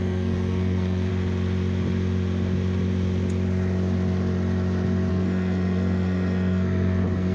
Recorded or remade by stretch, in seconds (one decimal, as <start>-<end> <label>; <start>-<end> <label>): 0.0-1.1 remade; 1.1-5.1 recorded; 5.1-7.3 remade